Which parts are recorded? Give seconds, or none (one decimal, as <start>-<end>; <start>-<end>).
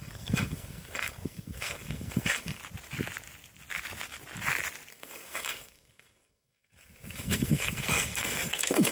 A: 2.6-4.9